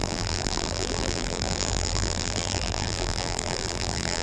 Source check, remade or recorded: remade